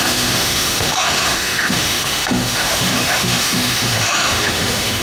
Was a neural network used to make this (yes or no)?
yes